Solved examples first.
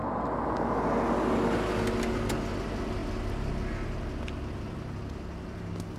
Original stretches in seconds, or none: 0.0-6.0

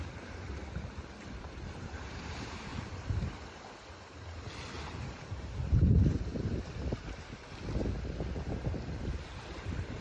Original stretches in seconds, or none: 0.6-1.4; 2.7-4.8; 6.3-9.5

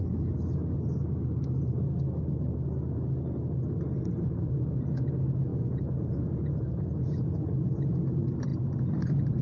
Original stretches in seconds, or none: 0.0-5.5; 7.9-9.4

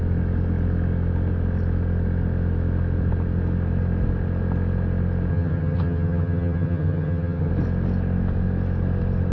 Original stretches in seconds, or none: 0.0-5.3; 7.5-9.3

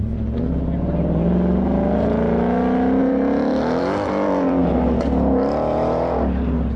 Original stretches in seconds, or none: 0.0-3.0; 4.6-6.8

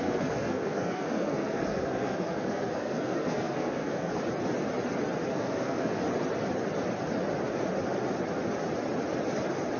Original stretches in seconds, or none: 4.2-5.3; 6.0-9.8